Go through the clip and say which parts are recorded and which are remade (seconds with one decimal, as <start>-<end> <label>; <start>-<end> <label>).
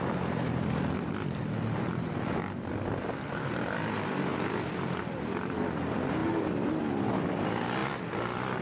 0.0-6.2 remade; 6.2-7.2 recorded; 7.2-8.6 remade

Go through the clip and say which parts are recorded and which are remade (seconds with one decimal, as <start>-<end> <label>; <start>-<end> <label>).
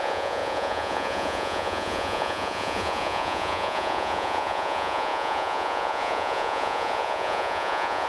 0.0-8.1 remade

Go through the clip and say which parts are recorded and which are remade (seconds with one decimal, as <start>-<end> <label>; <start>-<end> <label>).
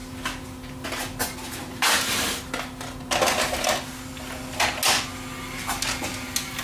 0.0-6.6 recorded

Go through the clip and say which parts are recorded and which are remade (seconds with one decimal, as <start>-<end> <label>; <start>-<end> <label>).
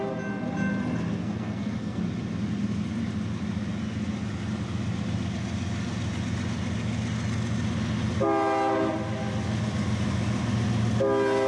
0.0-1.2 recorded; 1.2-2.0 remade; 2.0-11.5 recorded